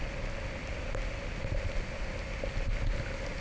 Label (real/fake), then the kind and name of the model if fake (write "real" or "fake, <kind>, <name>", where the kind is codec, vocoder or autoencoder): real